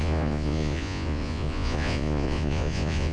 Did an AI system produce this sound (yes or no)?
yes